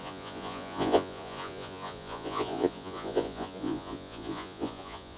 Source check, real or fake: fake